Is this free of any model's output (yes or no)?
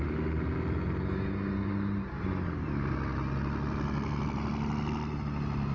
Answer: yes